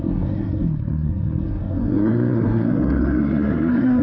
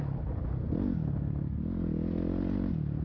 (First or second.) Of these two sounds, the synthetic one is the first